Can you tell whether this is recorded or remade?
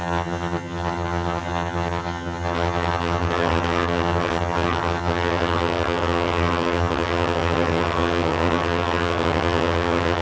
remade